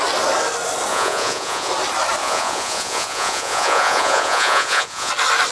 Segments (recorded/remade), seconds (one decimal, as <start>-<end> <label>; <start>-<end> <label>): 0.0-0.9 recorded; 0.9-1.7 remade; 1.7-2.2 recorded; 2.2-5.1 remade; 5.1-5.5 recorded